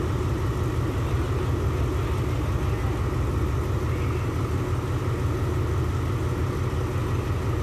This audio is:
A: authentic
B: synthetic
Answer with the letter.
A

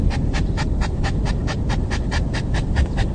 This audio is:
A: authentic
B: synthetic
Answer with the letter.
A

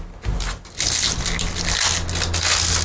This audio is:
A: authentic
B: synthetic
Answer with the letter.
A